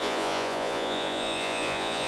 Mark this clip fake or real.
fake